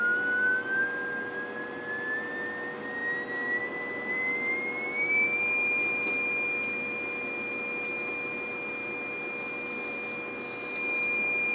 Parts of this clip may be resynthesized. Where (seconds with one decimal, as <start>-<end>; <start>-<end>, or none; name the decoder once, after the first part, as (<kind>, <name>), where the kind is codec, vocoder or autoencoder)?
none